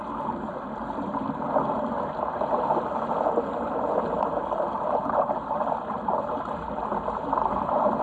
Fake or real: fake